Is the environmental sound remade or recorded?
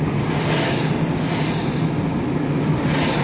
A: recorded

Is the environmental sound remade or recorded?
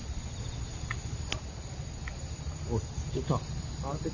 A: recorded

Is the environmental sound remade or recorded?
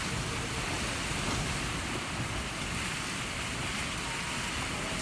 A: recorded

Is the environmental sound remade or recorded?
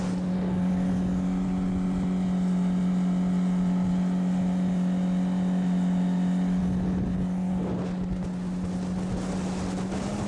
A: recorded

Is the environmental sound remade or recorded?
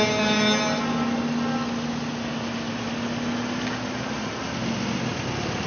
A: recorded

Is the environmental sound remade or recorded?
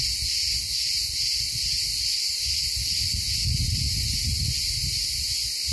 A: recorded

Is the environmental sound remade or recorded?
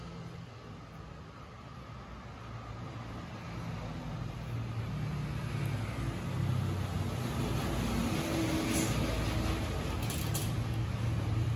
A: recorded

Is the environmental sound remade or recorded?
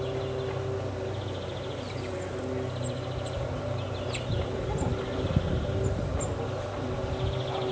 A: recorded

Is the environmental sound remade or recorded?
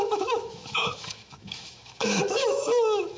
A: remade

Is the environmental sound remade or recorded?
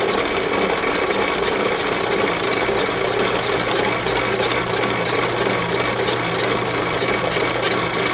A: recorded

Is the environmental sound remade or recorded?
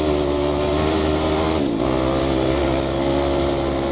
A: recorded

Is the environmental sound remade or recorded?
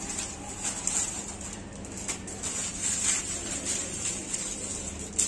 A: recorded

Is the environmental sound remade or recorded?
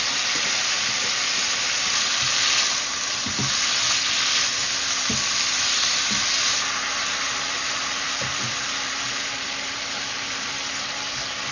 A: remade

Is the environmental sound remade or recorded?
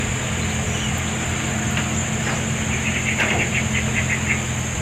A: recorded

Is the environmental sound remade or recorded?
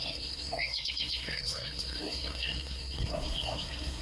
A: remade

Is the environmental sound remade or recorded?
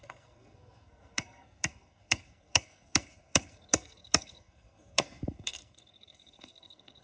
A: remade